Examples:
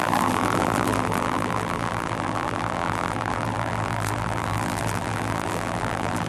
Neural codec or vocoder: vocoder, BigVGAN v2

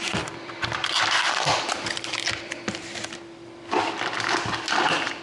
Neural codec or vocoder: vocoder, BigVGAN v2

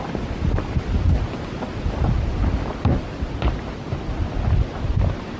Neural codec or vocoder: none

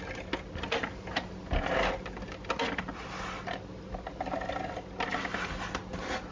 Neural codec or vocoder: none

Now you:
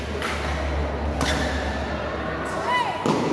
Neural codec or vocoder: none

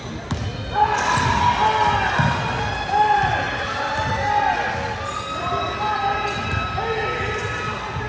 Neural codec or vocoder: none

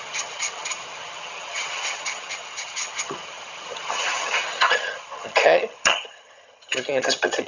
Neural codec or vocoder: vocoder, HiFi-GAN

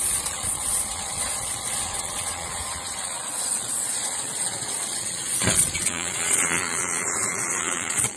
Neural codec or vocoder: vocoder, Vocos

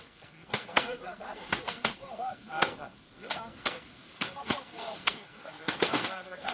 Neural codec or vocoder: codec, SNAC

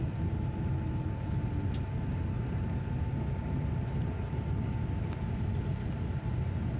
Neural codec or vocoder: none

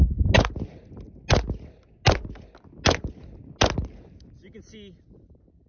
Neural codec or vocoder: none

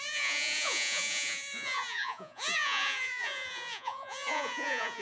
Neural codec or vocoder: vocoder, Vocos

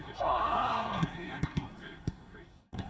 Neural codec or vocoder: codec, SNAC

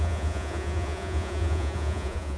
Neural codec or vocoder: vocoder, Vocos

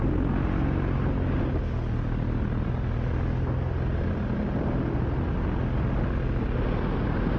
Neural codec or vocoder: none